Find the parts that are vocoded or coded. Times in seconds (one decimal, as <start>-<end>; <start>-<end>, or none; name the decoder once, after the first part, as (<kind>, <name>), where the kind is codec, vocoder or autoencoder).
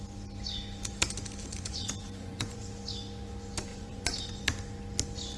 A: 1.4-2.6 (vocoder, Vocos); 3.7-4.4